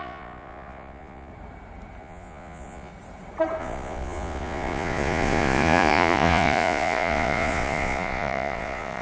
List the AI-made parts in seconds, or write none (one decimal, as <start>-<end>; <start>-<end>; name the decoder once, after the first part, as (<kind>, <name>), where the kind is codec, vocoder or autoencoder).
0.0-1.3 (vocoder, Vocos); 2.0-2.9; 3.6-9.0